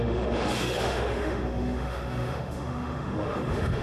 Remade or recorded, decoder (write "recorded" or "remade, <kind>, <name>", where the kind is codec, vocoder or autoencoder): remade, autoencoder, DAC-VAE